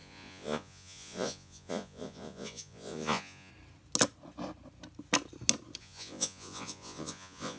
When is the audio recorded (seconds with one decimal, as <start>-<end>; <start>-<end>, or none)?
3.5-5.8